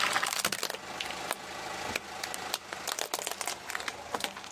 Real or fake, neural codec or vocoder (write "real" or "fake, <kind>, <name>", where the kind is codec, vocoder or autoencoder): real